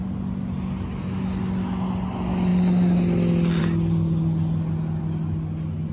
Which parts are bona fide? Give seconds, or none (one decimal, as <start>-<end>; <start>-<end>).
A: 0.0-5.9